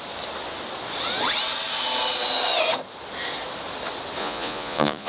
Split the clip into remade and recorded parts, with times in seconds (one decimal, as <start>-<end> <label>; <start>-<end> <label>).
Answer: 0.0-4.2 recorded; 4.2-5.1 remade